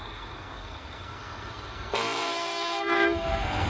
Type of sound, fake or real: fake